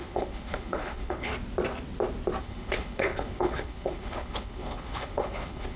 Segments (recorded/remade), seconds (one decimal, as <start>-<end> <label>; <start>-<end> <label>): 0.0-1.3 remade; 1.3-2.4 recorded; 2.4-5.8 remade